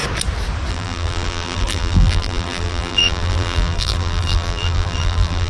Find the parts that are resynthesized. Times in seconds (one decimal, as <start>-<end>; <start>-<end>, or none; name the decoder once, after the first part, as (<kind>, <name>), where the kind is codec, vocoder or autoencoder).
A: 0.7-5.5 (vocoder, BigVGAN v2)